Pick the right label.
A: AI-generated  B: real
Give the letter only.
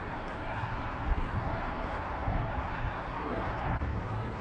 A